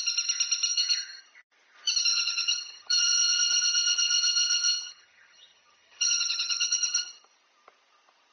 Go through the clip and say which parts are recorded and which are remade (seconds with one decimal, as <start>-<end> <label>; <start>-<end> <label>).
0.0-0.7 recorded; 0.7-1.2 remade; 1.2-2.1 recorded; 2.1-7.1 remade; 7.1-8.3 recorded